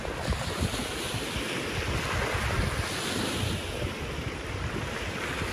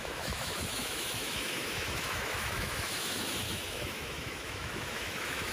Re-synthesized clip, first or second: second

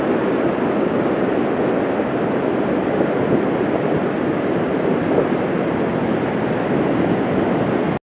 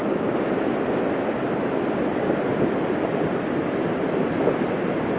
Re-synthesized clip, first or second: second